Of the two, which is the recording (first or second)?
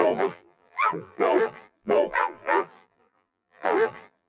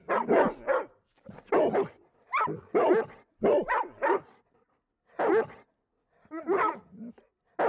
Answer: second